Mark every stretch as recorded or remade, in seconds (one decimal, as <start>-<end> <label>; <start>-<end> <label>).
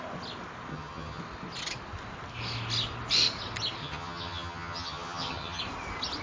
0.0-0.7 recorded; 0.7-1.2 remade; 1.2-3.8 recorded; 3.8-5.6 remade; 5.6-6.2 recorded